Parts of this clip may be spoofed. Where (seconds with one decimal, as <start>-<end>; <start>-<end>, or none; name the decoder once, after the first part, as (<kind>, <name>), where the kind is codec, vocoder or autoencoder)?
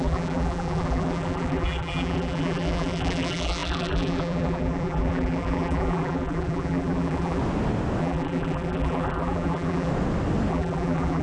0.0-7.4 (vocoder, BigVGAN v2); 8.0-9.9; 10.5-11.2